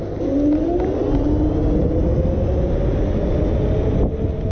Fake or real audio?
real